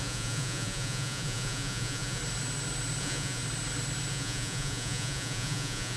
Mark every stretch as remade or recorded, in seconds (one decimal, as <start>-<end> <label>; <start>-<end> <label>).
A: 0.0-2.2 remade; 2.2-3.0 recorded; 3.0-3.4 remade; 3.4-4.1 recorded; 4.1-6.0 remade